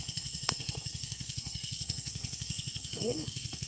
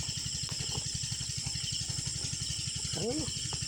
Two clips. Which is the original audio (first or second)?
second